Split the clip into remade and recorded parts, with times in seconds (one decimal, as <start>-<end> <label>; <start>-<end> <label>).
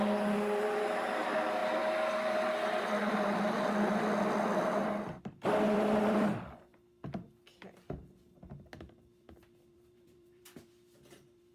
0.0-1.6 remade; 1.6-2.5 recorded; 2.5-6.7 remade; 6.7-8.8 recorded; 8.8-11.5 remade